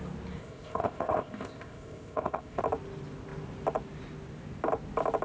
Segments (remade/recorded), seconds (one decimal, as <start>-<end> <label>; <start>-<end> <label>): 0.0-0.4 recorded; 0.4-2.6 remade; 2.6-5.2 recorded

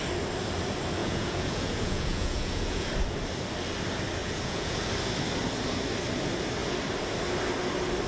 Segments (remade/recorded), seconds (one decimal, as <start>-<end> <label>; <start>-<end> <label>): 0.0-1.0 recorded; 1.0-2.9 remade; 2.9-4.2 recorded; 4.2-4.9 remade; 4.9-8.1 recorded

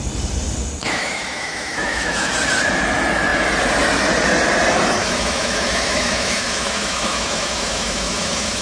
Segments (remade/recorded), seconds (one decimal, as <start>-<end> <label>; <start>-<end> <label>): 0.0-0.8 recorded; 0.8-2.3 remade; 2.3-5.0 recorded; 5.0-8.6 remade

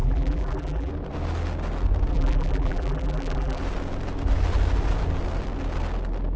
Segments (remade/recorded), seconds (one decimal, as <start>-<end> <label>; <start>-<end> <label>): 0.0-0.9 remade; 0.9-2.1 recorded; 2.1-3.6 remade; 3.6-6.4 recorded

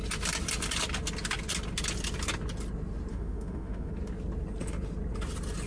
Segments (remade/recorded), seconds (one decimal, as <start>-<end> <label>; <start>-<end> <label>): 0.0-3.1 recorded; 3.1-3.9 remade; 3.9-5.7 recorded

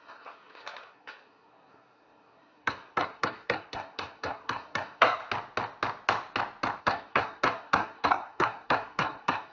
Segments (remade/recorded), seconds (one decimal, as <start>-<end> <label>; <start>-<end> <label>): 0.0-5.2 remade; 5.2-6.8 recorded; 6.8-9.5 remade